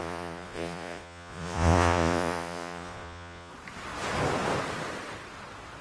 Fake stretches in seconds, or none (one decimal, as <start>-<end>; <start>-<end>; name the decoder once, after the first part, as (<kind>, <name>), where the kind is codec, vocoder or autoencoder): 0.0-3.5 (vocoder, Vocos)